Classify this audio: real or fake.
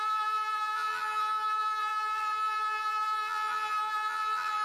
fake